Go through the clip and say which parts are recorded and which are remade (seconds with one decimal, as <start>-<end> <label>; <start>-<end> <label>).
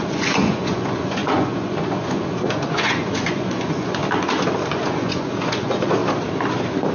0.0-4.0 remade; 4.0-4.7 recorded; 4.7-6.0 remade; 6.0-6.9 recorded